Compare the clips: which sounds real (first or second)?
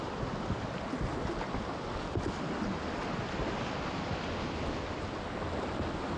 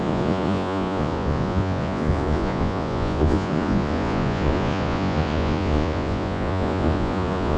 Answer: first